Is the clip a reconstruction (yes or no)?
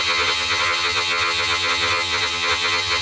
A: yes